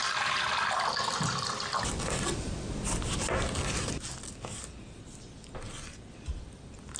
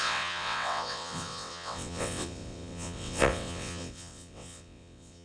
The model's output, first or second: second